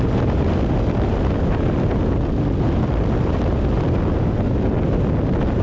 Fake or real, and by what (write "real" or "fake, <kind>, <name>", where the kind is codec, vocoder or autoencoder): real